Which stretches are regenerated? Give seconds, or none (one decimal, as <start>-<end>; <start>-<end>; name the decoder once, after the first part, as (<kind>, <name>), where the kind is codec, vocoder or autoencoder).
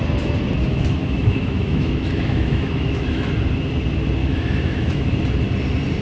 1.0-3.3 (autoencoder, DAC-VAE); 4.2-5.0